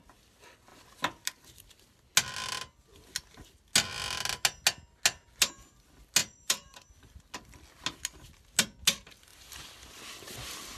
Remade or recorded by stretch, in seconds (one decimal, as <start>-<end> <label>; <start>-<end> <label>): 0.0-6.2 recorded; 6.2-6.9 remade; 6.9-9.3 recorded; 9.3-10.0 remade; 10.0-10.8 recorded